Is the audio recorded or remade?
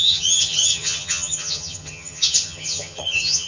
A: remade